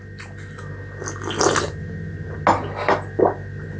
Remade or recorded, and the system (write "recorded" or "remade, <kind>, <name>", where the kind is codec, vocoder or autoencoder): recorded